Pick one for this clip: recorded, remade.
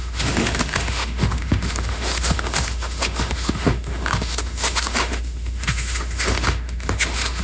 remade